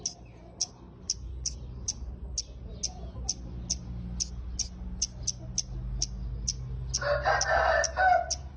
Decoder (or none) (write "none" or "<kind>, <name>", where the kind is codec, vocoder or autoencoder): none